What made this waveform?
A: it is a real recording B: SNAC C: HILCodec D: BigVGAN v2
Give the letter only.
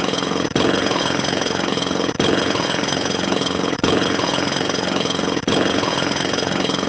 C